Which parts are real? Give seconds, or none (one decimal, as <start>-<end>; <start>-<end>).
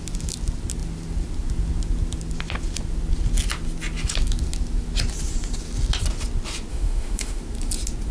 0.0-6.7; 7.4-8.1